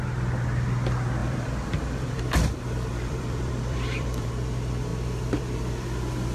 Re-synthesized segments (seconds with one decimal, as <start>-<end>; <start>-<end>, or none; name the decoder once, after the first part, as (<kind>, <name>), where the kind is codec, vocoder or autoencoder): 1.2-2.2 (vocoder, BigVGAN v2); 2.9-4.3